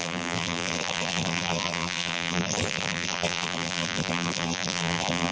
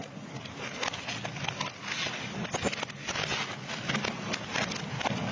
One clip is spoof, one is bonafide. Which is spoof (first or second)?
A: first